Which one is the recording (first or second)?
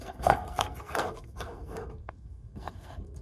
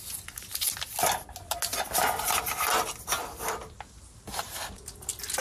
second